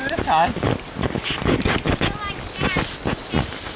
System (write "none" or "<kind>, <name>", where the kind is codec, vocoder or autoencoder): none